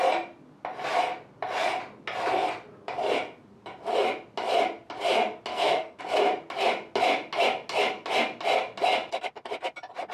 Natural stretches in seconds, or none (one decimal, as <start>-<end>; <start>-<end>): 0.0-5.5; 6.0-10.1